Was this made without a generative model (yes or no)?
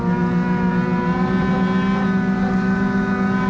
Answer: yes